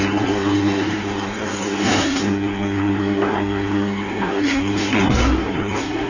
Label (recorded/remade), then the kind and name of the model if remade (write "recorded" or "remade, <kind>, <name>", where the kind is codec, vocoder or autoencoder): remade, codec, SNAC